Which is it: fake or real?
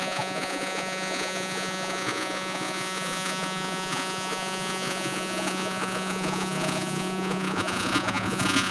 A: fake